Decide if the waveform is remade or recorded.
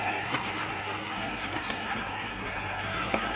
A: remade